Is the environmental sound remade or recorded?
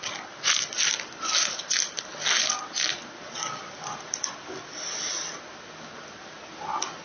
recorded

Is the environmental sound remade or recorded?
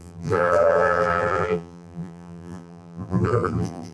remade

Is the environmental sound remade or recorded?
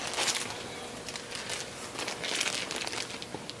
recorded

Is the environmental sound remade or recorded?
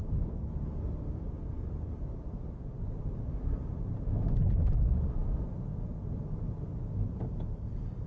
remade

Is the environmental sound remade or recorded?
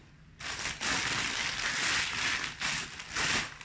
recorded